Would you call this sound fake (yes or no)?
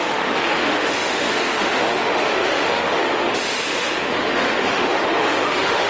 yes